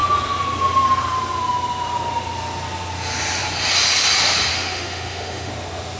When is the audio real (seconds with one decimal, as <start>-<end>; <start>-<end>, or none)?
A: 0.0-4.5; 5.5-6.0